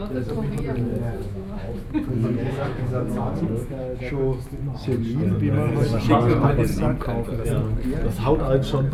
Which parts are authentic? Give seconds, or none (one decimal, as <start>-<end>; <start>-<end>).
0.0-0.9; 4.6-8.9